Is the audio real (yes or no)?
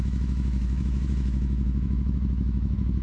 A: no